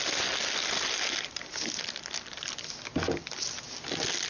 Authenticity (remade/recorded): recorded